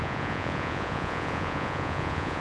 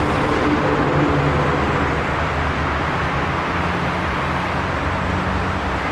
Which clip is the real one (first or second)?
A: second